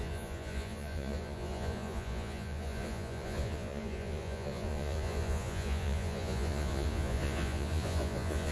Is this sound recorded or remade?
remade